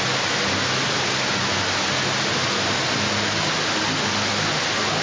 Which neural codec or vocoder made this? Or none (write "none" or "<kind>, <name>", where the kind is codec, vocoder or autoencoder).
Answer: none